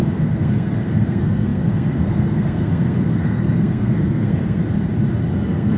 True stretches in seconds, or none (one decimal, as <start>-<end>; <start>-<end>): 4.6-5.3